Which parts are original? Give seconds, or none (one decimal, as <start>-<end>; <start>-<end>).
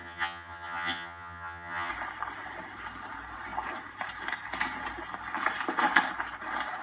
1.9-6.8